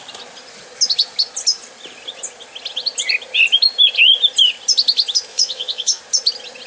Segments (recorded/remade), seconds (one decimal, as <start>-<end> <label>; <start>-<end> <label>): 0.0-5.3 recorded; 5.3-6.0 remade; 6.0-6.7 recorded